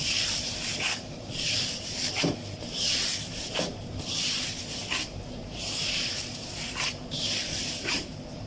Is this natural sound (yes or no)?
no